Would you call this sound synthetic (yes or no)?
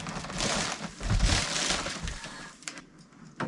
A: yes